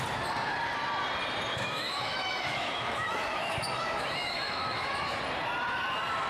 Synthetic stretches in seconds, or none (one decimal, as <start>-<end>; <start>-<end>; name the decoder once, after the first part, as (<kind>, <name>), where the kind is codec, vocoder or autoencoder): 1.5-5.2 (autoencoder, DAC-VAE)